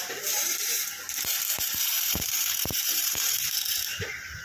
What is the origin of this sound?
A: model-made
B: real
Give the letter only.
A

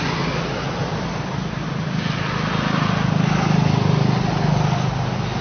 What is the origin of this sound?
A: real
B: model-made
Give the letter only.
A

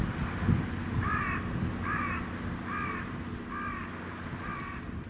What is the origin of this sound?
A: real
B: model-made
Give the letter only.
A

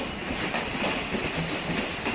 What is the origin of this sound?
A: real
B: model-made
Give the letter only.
A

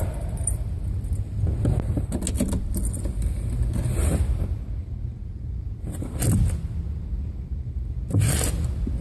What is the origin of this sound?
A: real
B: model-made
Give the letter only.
A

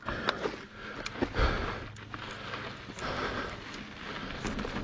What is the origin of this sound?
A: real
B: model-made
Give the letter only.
A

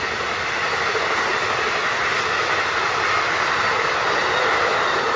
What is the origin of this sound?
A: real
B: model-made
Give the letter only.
A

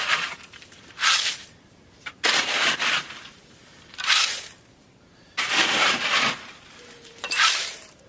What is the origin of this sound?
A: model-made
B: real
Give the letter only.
A